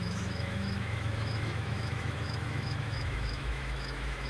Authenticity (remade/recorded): remade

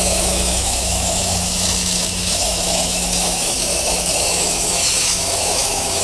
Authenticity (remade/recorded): remade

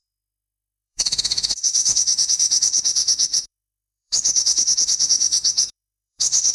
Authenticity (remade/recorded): remade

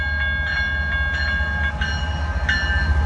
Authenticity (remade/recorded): recorded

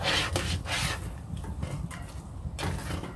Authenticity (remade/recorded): recorded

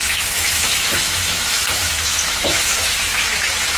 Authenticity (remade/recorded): remade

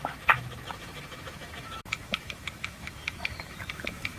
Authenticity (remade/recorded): remade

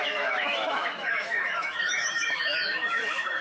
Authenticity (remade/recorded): remade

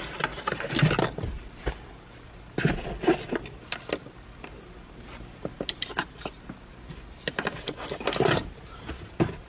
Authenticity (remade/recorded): recorded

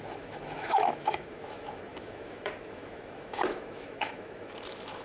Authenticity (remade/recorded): remade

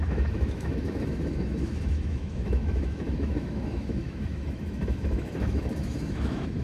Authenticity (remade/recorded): remade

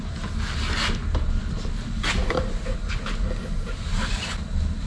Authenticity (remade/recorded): recorded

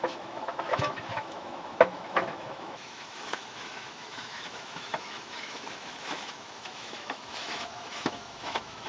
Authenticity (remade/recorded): remade